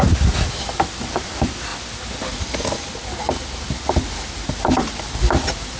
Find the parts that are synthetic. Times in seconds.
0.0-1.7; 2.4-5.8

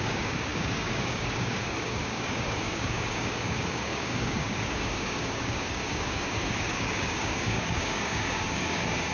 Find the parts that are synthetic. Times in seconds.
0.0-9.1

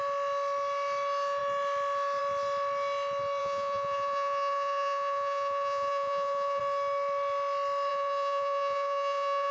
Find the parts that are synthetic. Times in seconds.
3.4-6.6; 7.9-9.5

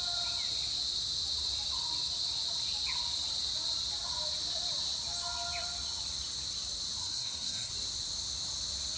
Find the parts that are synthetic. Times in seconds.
7.0-7.7

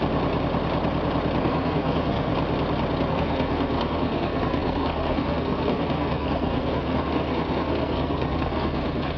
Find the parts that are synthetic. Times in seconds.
1.4-2.3; 3.1-9.2